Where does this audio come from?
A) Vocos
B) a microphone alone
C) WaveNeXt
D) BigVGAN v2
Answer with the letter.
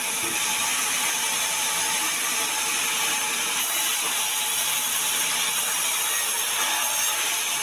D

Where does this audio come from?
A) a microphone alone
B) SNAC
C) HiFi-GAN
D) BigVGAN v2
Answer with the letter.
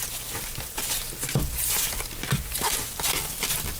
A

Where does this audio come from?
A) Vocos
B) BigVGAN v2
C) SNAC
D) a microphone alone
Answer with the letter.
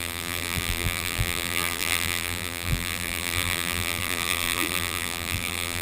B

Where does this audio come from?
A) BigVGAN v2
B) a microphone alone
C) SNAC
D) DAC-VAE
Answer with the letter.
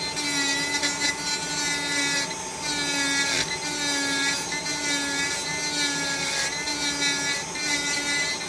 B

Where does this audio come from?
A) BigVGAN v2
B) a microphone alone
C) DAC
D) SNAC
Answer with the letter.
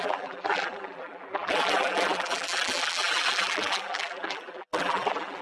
A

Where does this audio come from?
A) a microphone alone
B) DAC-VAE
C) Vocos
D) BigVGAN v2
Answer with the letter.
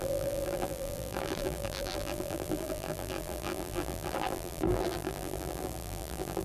D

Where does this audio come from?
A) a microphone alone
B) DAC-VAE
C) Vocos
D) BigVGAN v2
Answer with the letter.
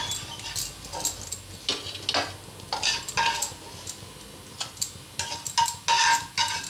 A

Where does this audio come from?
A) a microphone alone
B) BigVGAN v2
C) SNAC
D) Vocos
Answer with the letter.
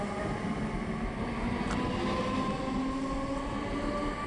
A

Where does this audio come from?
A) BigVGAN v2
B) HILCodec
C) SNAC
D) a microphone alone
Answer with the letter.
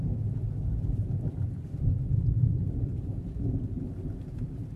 D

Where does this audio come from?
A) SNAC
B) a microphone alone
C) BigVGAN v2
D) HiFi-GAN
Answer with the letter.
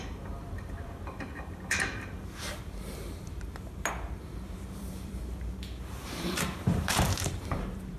C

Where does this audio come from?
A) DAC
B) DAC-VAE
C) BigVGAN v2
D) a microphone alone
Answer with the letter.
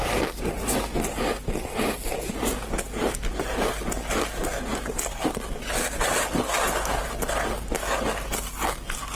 D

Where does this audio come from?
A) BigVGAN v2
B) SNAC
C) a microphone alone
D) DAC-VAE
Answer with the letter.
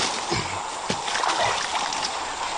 C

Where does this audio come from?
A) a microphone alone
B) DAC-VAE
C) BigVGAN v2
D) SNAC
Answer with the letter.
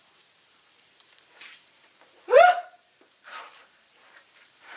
C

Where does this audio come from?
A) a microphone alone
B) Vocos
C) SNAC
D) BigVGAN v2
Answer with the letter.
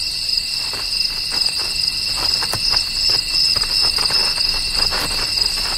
D